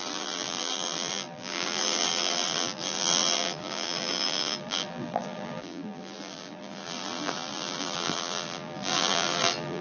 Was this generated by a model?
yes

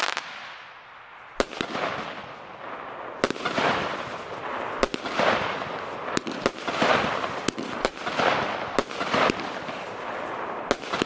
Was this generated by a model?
no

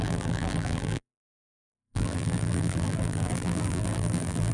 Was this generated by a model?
yes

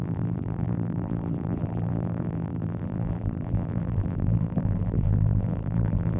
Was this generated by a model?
yes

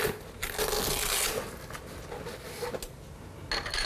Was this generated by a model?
no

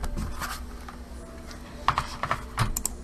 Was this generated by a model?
no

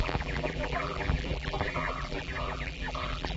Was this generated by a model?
yes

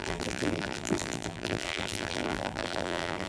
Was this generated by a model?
yes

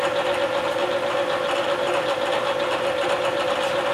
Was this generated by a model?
no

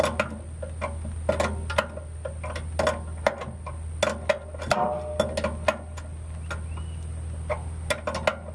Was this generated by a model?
no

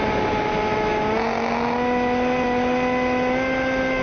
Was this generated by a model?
no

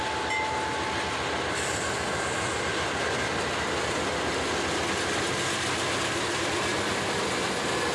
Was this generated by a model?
no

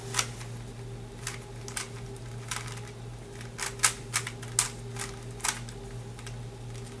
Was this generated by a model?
no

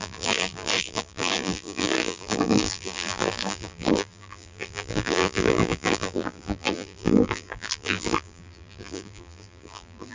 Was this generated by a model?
yes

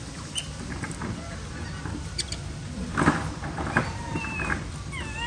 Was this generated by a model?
no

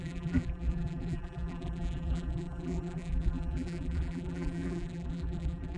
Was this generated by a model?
yes